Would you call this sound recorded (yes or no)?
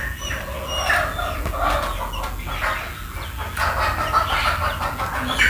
yes